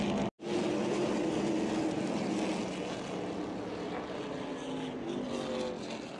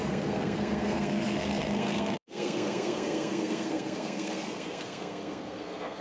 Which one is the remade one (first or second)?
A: second